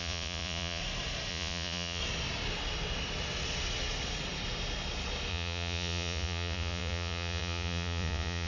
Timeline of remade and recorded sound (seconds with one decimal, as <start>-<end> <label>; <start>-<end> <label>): 0.0-0.8 remade; 0.8-1.3 recorded; 1.3-2.0 remade; 2.0-5.3 recorded; 5.3-8.5 remade